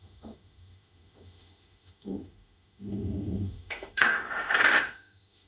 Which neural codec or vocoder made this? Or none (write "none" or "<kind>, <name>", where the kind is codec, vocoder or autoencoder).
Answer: autoencoder, DAC-VAE